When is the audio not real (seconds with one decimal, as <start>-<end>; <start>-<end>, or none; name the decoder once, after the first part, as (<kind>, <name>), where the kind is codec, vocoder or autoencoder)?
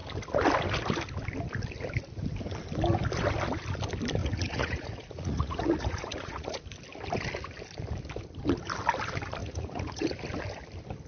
4.2-6.6 (vocoder, Vocos); 9.4-10.1